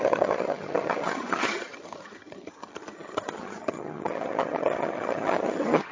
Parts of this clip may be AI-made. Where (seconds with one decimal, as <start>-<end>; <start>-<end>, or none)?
0.0-5.9